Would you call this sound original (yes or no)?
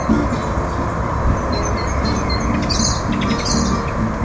yes